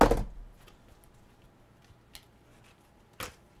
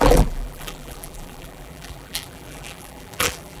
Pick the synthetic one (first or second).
second